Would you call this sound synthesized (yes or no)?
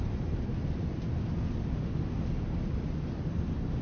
no